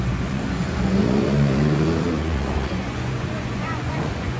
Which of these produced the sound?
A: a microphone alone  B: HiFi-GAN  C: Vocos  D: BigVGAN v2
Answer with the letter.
C